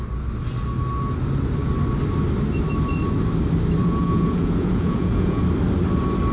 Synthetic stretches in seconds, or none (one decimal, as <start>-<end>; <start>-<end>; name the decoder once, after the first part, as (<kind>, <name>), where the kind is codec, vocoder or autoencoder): 3.8-5.4 (vocoder, Vocos)